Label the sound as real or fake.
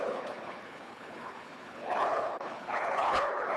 fake